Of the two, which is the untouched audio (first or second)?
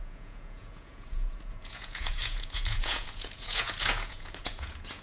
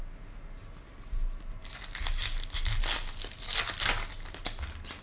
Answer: second